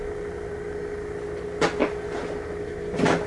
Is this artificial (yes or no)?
no